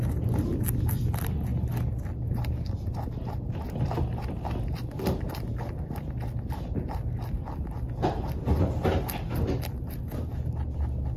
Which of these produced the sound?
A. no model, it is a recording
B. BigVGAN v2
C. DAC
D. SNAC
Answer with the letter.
A